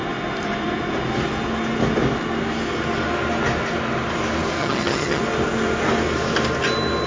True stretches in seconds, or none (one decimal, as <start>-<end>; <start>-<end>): 0.0-4.6; 5.2-7.1

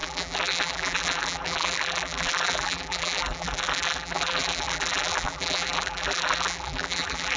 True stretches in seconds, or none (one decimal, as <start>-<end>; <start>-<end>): none

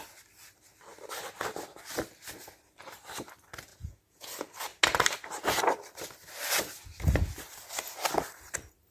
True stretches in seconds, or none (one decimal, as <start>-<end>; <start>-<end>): 0.0-3.7; 4.3-8.9

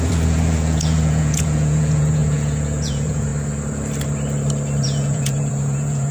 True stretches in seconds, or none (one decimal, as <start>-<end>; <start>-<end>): 3.3-4.8